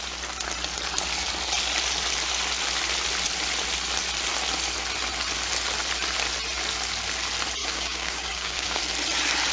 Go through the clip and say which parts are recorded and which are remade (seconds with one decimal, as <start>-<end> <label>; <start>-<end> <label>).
0.0-7.6 recorded; 7.6-8.8 remade; 8.8-9.5 recorded